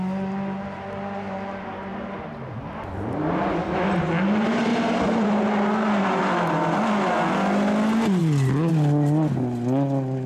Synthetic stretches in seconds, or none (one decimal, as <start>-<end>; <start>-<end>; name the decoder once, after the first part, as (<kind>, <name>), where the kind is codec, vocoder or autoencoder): none